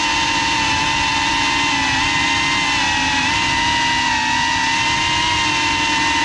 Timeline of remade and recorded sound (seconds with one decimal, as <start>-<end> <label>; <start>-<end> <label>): 0.0-6.2 recorded